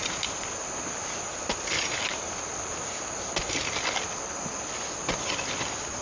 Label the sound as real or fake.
real